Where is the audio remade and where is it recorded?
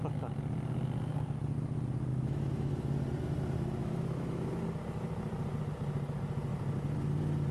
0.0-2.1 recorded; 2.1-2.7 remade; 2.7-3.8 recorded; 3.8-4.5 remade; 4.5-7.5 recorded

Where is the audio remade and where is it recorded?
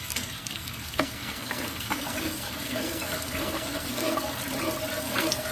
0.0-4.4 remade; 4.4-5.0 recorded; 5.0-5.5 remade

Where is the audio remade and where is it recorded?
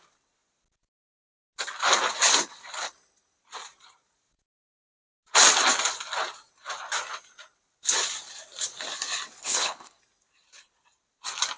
0.0-9.4 recorded; 9.4-10.0 remade; 10.0-11.6 recorded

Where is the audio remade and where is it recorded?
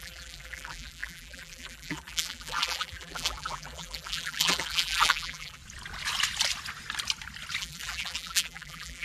0.0-5.6 remade; 5.6-7.6 recorded; 7.6-9.0 remade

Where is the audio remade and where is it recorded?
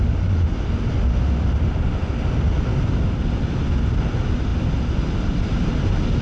0.0-6.2 recorded